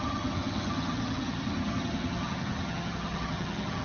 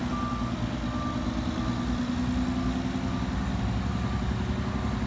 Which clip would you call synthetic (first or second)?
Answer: first